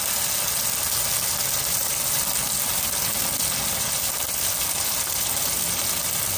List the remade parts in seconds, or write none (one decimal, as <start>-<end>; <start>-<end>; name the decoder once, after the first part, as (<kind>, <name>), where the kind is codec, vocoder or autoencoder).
none